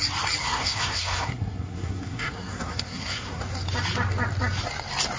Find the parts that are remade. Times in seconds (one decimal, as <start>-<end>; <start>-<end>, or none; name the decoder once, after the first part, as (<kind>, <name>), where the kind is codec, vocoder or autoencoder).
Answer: 0.4-3.4 (codec, SNAC)